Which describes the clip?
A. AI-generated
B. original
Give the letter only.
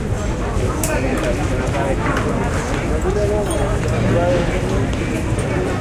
B